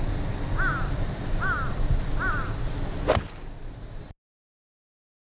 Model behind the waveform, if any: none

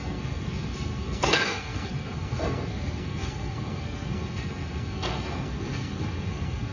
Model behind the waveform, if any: codec, SNAC